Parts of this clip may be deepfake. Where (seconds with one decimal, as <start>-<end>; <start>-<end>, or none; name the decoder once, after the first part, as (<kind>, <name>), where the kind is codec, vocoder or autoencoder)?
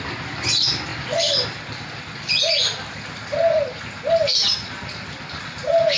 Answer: none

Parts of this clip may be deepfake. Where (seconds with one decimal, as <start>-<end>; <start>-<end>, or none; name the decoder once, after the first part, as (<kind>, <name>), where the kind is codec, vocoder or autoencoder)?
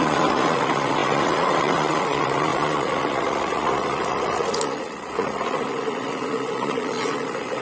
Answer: 0.0-7.6 (vocoder, Vocos)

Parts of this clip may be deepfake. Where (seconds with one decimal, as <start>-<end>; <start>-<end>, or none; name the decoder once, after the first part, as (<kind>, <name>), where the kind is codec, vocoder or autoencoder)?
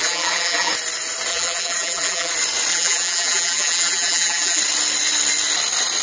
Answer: 0.0-0.7 (vocoder, BigVGAN v2); 1.3-2.3; 2.7-4.6